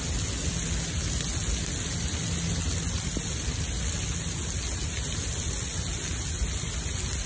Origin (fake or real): real